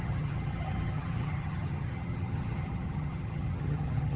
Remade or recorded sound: remade